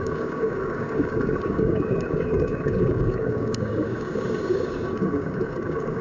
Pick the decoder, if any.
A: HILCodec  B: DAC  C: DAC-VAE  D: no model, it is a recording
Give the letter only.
B